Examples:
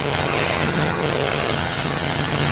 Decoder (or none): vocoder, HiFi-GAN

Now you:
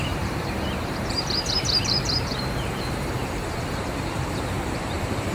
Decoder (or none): vocoder, BigVGAN v2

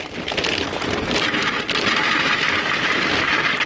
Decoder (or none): none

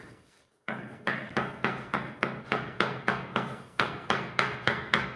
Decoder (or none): codec, SNAC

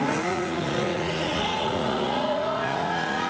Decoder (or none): vocoder, Vocos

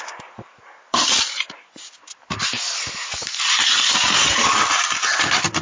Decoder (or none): none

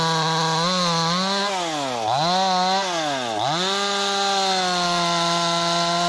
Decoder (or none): none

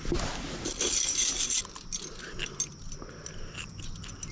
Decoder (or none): none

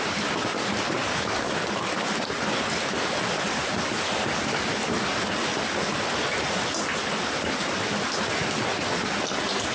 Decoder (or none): none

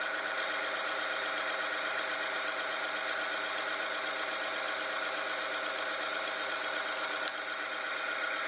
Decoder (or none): none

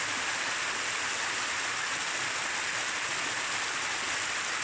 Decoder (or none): none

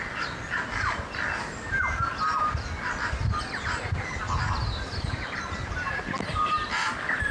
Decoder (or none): none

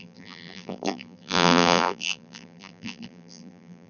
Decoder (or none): vocoder, BigVGAN v2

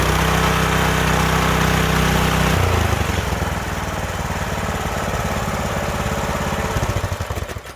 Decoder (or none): none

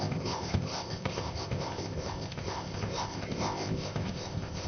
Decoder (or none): codec, ZipCodec